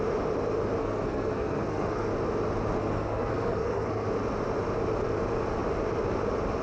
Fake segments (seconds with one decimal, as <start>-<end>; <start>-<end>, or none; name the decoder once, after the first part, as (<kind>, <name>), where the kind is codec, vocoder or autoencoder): 0.8-2.1 (codec, SNAC); 2.8-4.1